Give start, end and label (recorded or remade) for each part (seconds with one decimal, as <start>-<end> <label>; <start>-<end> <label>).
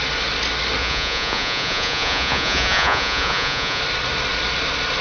0.0-0.8 recorded; 0.8-3.8 remade; 3.8-5.0 recorded